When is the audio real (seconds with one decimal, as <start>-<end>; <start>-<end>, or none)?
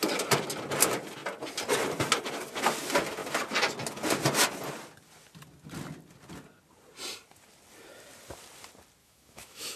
0.0-9.0